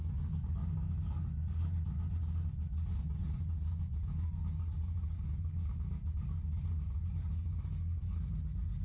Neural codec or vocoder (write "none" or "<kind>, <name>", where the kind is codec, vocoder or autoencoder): none